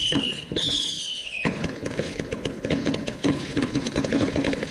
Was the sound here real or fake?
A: fake